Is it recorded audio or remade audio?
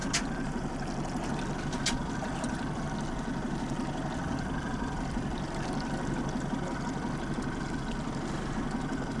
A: recorded